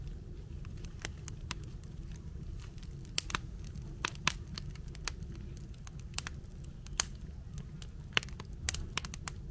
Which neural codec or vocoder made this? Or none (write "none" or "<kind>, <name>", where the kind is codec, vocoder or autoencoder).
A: none